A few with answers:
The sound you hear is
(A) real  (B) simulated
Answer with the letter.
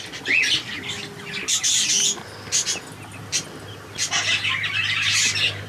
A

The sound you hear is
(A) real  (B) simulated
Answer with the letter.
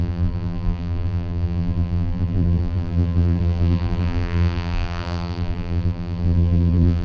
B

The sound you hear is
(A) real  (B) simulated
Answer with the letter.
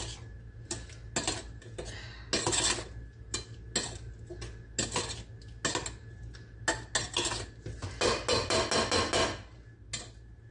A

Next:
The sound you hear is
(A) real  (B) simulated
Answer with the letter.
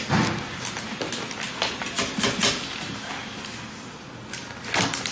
A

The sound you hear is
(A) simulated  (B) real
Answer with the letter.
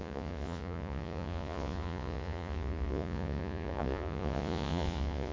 A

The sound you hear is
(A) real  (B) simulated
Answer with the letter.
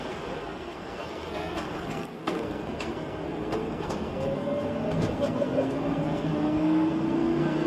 B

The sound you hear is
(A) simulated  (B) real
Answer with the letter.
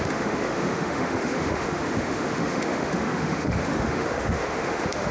A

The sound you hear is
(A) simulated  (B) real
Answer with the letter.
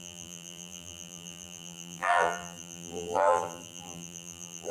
A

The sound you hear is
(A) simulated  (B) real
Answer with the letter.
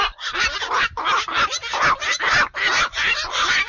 B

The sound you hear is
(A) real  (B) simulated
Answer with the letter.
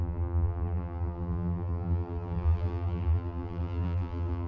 B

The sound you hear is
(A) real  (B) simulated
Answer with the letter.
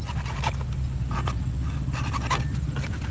A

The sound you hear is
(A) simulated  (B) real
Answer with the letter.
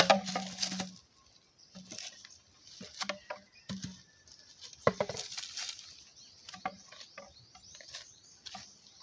B